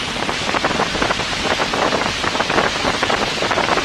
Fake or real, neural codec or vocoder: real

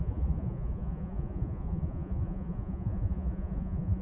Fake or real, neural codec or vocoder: fake, vocoder, Vocos